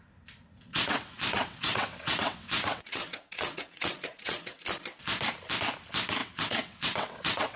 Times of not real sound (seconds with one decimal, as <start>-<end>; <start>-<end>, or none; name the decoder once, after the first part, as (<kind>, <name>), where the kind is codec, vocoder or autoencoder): 0.7-4.6 (vocoder, WaveNeXt); 6.2-7.6